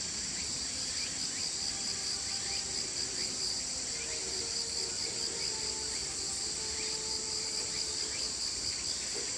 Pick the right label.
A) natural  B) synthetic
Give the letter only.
A